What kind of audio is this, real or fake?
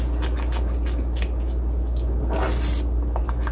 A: real